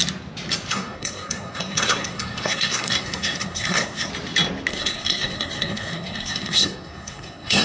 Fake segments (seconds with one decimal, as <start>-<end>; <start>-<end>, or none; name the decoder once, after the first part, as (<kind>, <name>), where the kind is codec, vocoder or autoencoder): 0.7-4.1 (codec, SNAC); 4.7-7.6